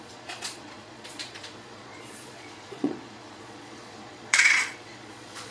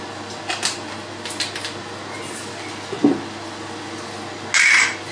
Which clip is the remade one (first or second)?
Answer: first